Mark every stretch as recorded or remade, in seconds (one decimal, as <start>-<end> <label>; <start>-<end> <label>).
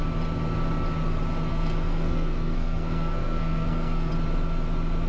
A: 0.0-1.5 recorded; 1.5-4.1 remade; 4.1-5.1 recorded